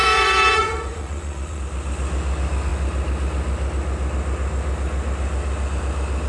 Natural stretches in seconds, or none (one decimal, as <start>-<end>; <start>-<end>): 1.6-6.3